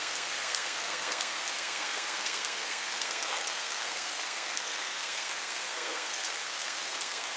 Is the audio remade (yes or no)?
yes